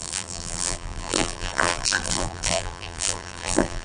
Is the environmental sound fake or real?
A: fake